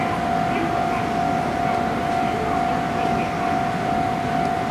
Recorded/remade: recorded